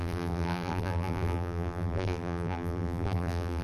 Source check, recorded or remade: remade